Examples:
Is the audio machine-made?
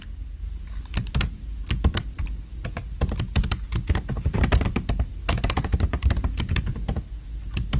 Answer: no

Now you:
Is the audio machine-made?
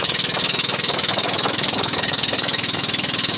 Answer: yes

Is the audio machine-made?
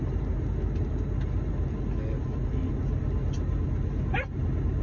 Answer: no